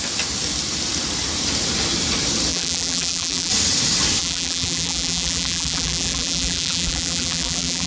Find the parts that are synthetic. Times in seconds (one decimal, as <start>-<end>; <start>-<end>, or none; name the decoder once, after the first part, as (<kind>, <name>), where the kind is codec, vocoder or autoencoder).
2.5-3.5 (vocoder, BigVGAN v2); 4.2-7.9